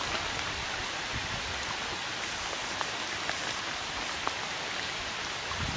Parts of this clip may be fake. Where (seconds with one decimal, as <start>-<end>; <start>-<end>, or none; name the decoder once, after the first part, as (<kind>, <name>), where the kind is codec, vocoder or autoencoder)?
none